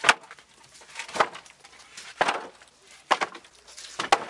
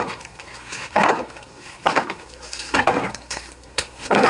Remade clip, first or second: second